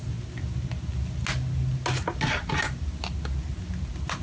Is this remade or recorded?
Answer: recorded